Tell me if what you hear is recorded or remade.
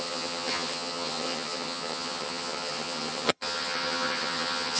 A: remade